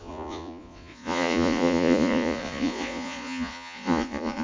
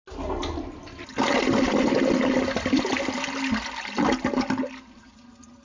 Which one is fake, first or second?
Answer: first